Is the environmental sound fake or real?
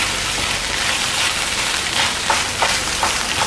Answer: real